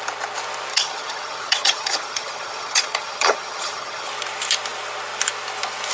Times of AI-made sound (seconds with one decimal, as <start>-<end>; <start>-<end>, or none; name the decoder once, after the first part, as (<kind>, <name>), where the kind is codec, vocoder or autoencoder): 0.7-4.1 (vocoder, HiFi-GAN)